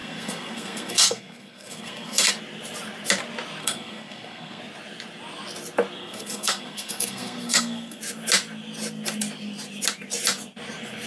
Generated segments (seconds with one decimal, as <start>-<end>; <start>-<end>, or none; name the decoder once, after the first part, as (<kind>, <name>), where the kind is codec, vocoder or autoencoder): 0.0-2.3 (codec, SNAC); 3.6-4.6; 6.0-8.0